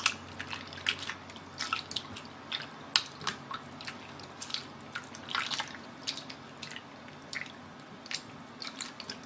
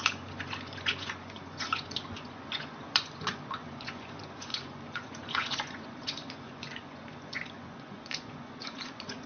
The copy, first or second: second